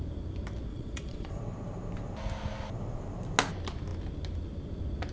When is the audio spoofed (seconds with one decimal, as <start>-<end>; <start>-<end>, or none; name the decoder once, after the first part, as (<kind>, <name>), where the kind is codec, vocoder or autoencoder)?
0.7-1.4 (vocoder, Vocos)